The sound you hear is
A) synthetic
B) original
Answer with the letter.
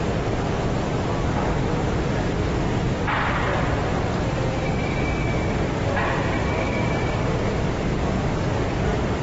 A